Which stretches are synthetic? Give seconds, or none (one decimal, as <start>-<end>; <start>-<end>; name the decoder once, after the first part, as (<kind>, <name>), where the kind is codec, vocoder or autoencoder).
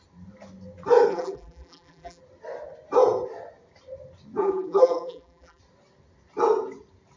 1.1-2.2 (vocoder, BigVGAN v2); 4.4-5.6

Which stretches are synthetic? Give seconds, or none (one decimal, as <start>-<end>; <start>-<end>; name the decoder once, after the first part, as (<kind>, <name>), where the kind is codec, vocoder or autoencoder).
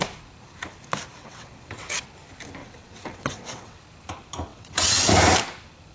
1.2-2.0 (vocoder, WaveNeXt); 2.6-3.8; 4.5-5.1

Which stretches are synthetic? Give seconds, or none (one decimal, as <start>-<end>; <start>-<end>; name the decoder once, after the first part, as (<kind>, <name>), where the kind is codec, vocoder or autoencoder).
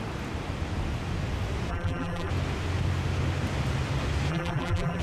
1.7-2.3 (vocoder, BigVGAN v2); 4.3-5.0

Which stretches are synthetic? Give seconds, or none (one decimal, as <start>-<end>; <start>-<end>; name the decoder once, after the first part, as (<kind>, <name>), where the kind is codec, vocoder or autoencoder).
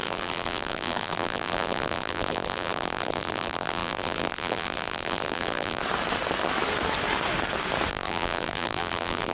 0.0-5.8 (vocoder, BigVGAN v2); 7.9-9.3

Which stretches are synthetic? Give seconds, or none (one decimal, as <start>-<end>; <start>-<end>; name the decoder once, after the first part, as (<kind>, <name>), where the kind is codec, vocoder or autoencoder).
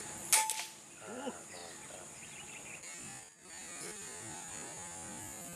none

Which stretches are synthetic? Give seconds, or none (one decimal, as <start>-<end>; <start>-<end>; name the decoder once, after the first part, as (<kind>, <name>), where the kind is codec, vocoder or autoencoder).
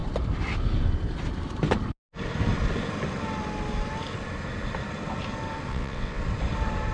5.7-6.2 (vocoder, WaveNeXt)